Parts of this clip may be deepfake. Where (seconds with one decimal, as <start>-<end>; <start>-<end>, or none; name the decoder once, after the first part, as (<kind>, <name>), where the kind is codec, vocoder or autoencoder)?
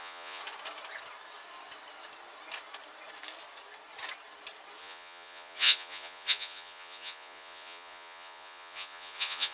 0.0-0.4 (vocoder, Vocos); 4.8-9.5